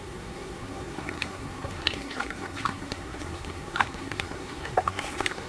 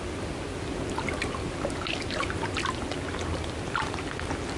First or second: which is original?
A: second